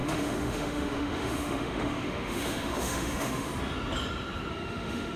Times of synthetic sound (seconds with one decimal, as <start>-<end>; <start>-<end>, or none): 0.0-3.5; 4.5-5.2